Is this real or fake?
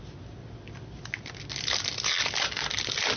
real